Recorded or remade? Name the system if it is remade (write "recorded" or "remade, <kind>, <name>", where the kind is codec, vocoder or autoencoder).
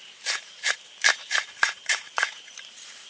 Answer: remade, vocoder, BigVGAN v2